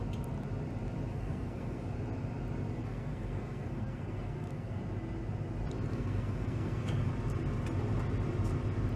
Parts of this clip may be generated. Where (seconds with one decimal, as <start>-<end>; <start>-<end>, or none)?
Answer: 1.1-1.8; 2.8-4.8; 5.9-7.1